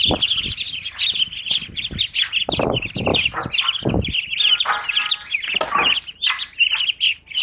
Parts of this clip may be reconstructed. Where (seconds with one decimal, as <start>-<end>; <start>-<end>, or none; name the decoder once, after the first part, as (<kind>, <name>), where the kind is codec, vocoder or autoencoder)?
none